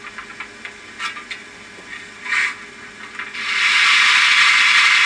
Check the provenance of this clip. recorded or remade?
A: recorded